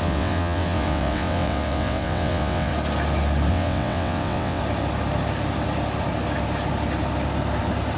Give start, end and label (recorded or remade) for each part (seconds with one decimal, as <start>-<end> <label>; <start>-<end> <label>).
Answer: 0.0-2.7 remade; 2.7-3.5 recorded; 3.5-4.6 remade; 4.6-8.0 recorded